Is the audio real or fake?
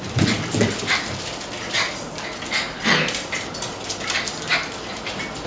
real